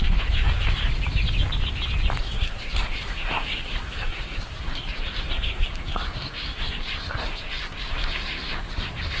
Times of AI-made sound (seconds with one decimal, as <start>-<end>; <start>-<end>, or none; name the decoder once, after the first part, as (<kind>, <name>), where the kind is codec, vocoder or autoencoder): 0.0-0.8 (codec, SNAC); 2.2-9.2

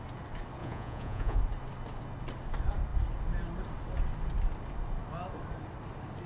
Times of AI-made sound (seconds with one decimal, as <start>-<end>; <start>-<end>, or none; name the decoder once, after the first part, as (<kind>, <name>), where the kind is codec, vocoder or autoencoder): 0.6-1.4 (vocoder, Vocos)

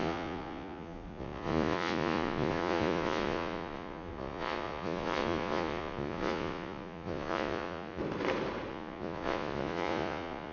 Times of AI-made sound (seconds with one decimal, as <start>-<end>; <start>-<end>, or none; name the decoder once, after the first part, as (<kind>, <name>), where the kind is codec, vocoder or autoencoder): 0.0-8.0 (vocoder, Vocos); 8.7-10.5

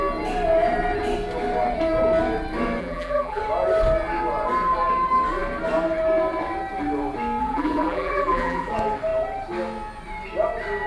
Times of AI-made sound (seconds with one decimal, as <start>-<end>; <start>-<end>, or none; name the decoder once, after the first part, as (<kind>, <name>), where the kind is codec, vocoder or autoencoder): 2.8-3.4 (vocoder, BigVGAN v2); 7.4-8.7

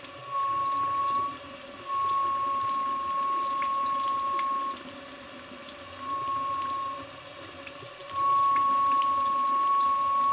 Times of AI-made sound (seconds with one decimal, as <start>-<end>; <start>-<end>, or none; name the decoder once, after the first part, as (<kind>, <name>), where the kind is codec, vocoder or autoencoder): none

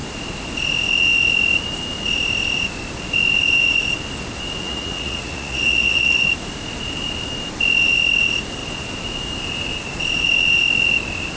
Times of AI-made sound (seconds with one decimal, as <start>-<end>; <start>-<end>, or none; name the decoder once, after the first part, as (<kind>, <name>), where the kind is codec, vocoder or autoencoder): 4.6-6.2 (vocoder, Vocos)

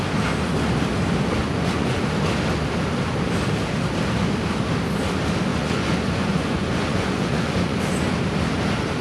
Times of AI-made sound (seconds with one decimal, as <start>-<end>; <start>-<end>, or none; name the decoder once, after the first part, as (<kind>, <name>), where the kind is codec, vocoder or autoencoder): 1.4-2.0 (vocoder, Vocos); 5.5-7.8